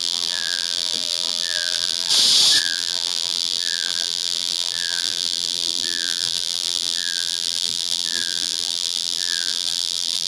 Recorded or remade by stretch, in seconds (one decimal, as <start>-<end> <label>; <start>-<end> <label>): 0.0-2.1 remade; 2.1-2.6 recorded; 2.6-10.3 remade